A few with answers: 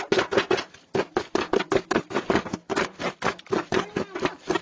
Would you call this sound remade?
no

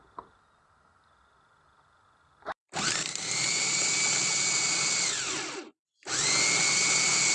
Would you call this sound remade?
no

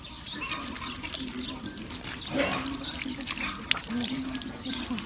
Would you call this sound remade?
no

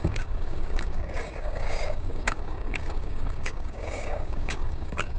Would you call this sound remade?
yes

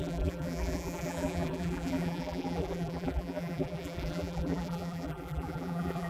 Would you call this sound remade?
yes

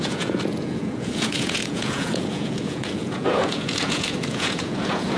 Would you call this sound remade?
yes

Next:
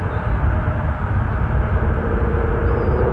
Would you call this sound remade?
no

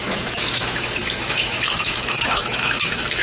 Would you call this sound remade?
yes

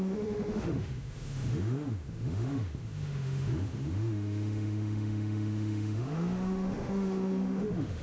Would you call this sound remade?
yes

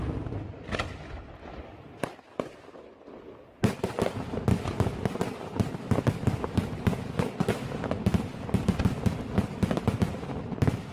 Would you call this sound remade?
no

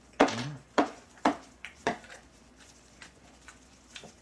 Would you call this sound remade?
yes